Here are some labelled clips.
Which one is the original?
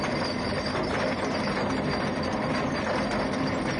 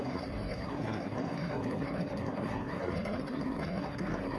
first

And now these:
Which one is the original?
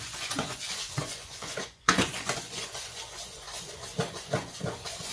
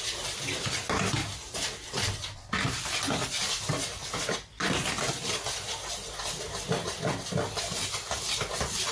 second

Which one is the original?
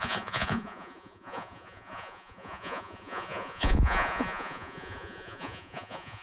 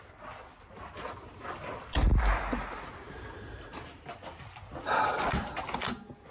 second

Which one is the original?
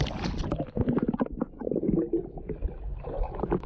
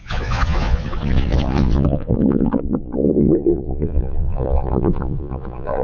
first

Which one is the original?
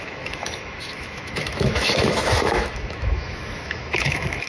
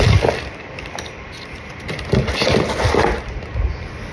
second